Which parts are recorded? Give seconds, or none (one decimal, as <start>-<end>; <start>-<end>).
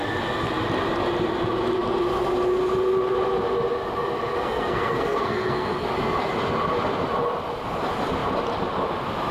0.0-4.4; 5.9-9.3